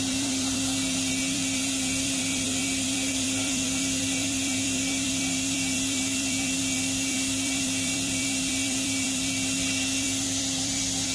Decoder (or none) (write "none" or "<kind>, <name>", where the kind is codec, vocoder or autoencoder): vocoder, BigVGAN v2